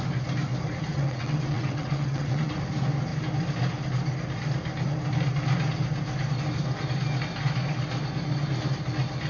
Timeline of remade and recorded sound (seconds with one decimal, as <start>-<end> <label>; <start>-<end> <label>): 0.0-0.9 recorded; 0.9-2.5 remade; 2.5-9.3 recorded